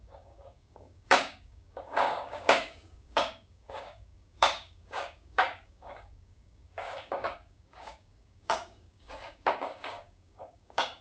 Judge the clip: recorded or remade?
remade